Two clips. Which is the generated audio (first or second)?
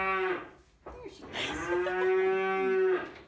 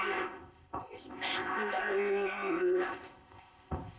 second